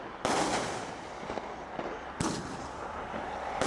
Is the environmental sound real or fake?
real